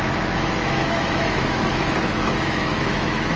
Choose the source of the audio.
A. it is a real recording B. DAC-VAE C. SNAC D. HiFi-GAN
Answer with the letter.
B